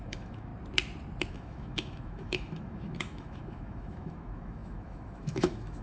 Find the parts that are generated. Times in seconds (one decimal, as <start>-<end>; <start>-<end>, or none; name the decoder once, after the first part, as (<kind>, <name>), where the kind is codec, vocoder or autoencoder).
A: 0.0-0.5 (autoencoder, DAC-VAE); 1.3-5.8